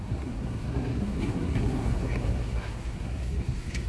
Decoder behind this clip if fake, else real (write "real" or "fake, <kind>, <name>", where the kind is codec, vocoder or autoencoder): fake, codec, SNAC